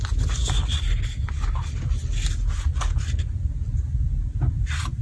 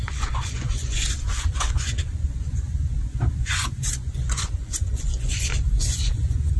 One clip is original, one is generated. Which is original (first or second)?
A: first